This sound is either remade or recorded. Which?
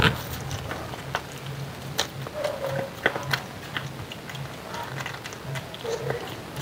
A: recorded